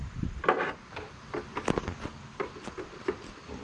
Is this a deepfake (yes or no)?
no